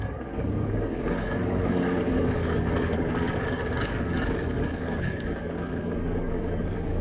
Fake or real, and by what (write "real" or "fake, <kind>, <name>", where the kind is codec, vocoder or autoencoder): fake, codec, DAC